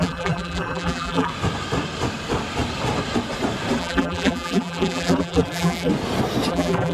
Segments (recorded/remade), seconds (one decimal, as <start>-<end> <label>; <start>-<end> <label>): 0.0-1.3 remade; 1.3-3.8 recorded; 3.8-5.9 remade; 5.9-6.5 recorded; 6.5-6.9 remade